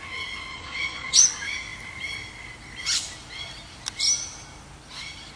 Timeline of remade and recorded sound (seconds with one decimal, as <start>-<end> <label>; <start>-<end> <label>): 0.0-0.5 recorded; 0.5-1.2 remade; 1.2-5.4 recorded